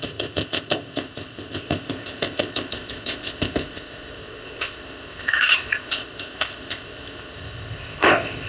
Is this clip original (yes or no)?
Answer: no